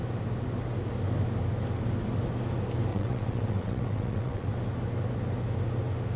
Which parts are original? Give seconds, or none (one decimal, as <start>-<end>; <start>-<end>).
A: 0.0-2.9; 4.5-6.2